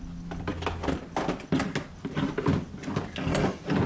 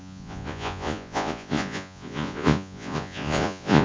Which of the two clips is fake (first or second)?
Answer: second